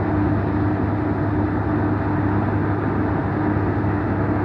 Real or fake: real